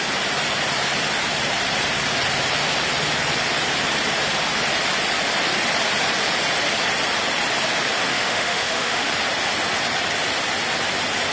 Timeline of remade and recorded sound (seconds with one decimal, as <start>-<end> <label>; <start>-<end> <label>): 0.0-8.1 recorded; 8.1-9.1 remade; 9.1-11.3 recorded